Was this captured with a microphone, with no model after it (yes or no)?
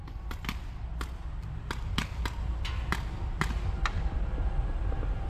yes